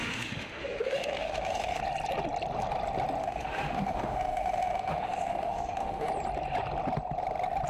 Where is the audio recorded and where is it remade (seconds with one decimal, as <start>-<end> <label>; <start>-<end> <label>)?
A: 0.0-1.8 remade; 1.8-3.2 recorded; 3.2-6.1 remade; 6.1-7.7 recorded

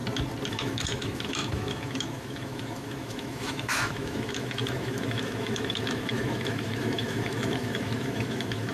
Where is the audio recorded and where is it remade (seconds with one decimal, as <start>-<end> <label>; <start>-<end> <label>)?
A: 0.0-0.5 recorded; 0.5-8.7 remade

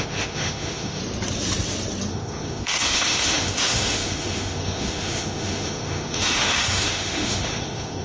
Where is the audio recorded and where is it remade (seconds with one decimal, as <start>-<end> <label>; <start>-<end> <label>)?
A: 0.0-1.0 remade; 1.0-2.1 recorded; 2.1-8.0 remade

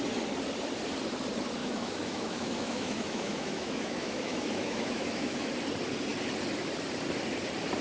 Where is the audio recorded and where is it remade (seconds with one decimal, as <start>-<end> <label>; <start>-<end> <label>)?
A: 0.0-1.6 recorded; 1.6-5.5 remade; 5.5-7.8 recorded

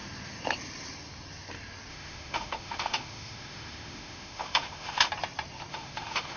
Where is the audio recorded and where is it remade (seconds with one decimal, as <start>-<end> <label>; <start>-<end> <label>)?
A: 0.0-1.9 recorded; 1.9-5.1 remade; 5.1-5.7 recorded; 5.7-6.4 remade

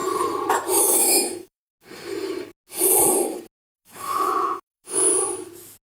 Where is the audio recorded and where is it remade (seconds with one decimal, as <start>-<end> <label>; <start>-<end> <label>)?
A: 0.0-0.8 recorded; 0.8-1.7 remade; 1.7-3.6 recorded; 3.6-5.1 remade; 5.1-5.9 recorded